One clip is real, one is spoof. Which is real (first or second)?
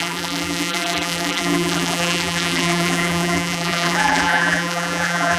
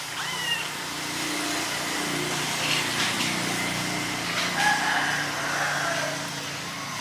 second